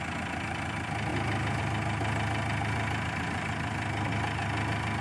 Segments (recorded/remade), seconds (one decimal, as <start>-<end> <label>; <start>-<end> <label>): 0.0-5.0 recorded